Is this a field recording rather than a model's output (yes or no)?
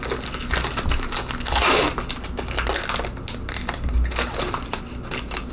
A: yes